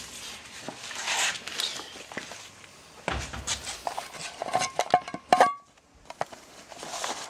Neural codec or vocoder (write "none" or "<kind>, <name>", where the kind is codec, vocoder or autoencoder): none